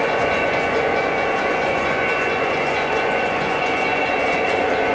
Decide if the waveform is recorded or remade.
remade